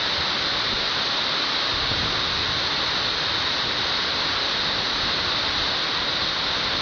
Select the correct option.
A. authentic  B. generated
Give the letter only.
A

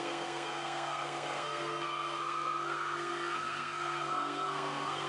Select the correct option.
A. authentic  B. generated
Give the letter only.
B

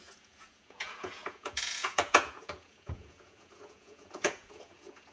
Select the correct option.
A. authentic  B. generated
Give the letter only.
B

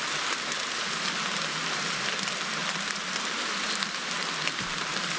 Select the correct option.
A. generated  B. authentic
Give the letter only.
B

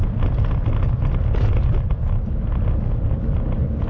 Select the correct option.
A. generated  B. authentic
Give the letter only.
B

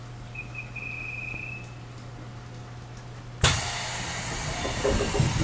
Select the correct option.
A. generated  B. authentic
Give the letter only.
B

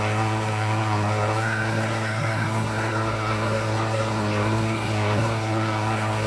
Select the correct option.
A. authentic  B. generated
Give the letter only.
B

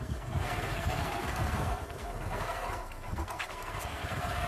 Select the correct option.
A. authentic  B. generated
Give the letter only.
B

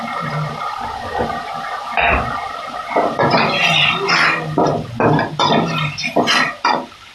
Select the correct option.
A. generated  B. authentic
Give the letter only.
B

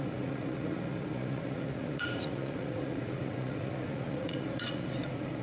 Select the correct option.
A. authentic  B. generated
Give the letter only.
B